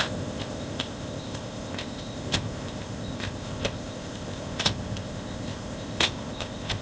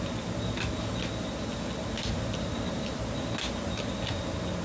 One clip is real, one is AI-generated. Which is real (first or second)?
second